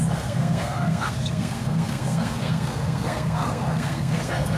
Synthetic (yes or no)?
yes